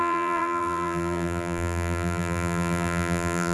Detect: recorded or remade remade